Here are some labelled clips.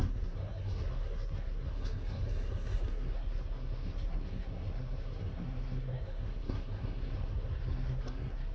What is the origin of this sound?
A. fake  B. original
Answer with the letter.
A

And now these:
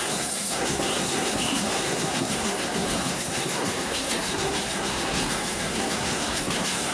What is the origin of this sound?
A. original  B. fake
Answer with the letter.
B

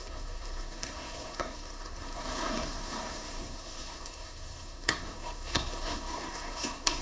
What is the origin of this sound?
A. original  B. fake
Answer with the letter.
B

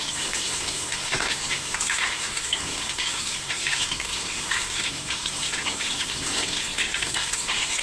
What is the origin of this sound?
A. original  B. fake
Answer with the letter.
B